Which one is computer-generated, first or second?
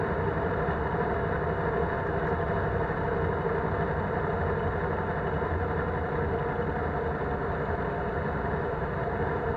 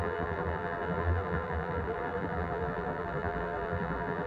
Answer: second